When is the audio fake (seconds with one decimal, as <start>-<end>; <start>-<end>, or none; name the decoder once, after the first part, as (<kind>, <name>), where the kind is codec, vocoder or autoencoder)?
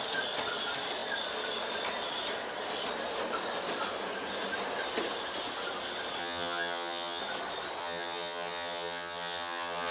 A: 6.2-7.2 (vocoder, HiFi-GAN); 7.8-9.9